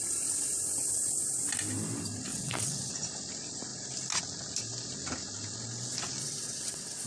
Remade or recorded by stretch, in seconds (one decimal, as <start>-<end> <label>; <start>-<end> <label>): 0.0-2.3 recorded; 2.3-2.9 remade; 2.9-6.2 recorded; 6.2-7.1 remade